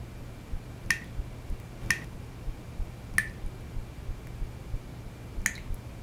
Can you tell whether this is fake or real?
real